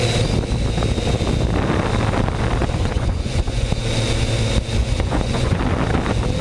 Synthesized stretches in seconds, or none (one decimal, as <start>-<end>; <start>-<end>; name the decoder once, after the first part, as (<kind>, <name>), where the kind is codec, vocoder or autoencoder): 2.6-3.7 (vocoder, Vocos); 4.8-5.6